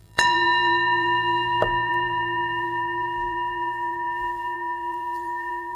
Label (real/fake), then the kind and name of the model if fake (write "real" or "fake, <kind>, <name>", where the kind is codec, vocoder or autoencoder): fake, vocoder, BigVGAN v2